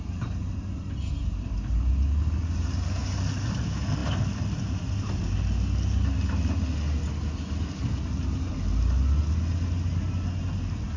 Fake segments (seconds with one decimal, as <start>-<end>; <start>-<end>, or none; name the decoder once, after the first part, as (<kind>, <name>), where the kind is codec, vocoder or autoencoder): none